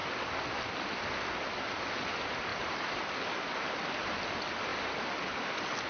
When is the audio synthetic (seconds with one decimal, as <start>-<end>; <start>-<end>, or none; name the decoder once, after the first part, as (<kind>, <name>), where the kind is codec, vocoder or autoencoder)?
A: 2.5-3.1 (vocoder, BigVGAN v2)